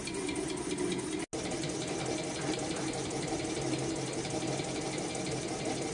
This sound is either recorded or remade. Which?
recorded